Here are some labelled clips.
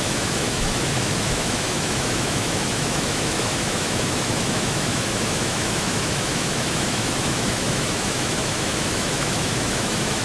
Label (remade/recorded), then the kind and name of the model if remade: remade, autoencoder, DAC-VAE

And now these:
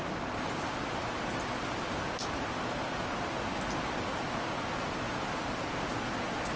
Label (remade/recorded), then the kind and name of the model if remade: recorded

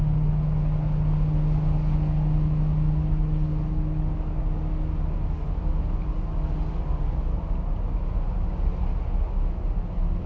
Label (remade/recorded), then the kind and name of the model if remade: recorded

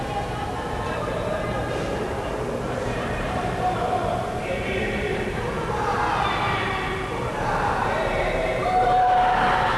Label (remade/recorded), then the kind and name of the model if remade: remade, vocoder, BigVGAN v2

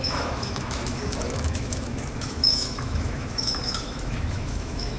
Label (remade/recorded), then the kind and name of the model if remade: remade, autoencoder, DAC-VAE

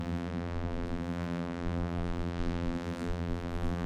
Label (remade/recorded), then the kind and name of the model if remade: remade, vocoder, BigVGAN v2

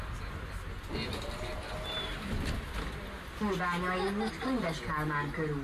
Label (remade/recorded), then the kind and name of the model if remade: recorded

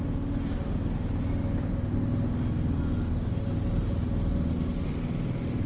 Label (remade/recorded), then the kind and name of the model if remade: recorded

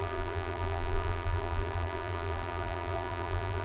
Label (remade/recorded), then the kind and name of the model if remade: remade, vocoder, BigVGAN v2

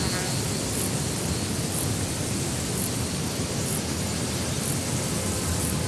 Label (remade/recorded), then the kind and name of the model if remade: recorded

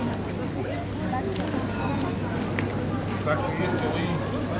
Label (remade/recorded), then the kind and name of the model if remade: recorded